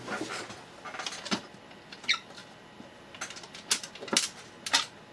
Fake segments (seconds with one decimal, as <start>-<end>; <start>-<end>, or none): none